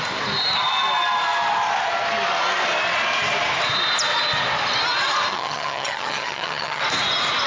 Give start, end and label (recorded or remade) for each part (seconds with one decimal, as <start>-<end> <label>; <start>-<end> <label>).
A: 0.0-5.3 recorded; 5.3-6.8 remade; 6.8-7.5 recorded